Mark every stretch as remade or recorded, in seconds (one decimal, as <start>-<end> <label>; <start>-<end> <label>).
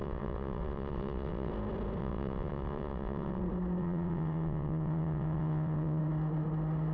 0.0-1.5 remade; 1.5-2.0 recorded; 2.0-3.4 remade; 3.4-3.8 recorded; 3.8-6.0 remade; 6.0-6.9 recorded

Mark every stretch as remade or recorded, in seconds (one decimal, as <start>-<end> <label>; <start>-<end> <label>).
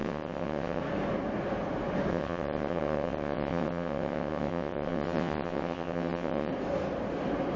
0.0-0.8 remade; 0.8-2.1 recorded; 2.1-6.5 remade; 6.5-7.6 recorded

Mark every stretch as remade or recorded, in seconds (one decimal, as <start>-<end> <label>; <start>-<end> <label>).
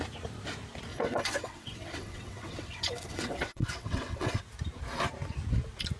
0.0-0.9 recorded; 0.9-4.4 remade; 4.4-6.0 recorded